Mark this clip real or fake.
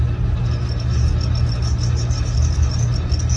real